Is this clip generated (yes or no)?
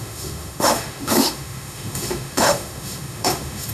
yes